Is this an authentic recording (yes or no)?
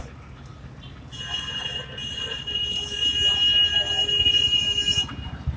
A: yes